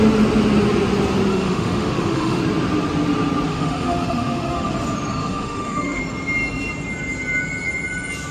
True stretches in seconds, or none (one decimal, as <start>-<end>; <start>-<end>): 0.0-1.3; 2.4-3.5; 4.7-5.2; 6.0-8.3